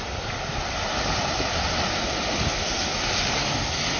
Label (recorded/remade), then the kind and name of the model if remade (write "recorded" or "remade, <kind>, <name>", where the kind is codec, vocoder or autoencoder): recorded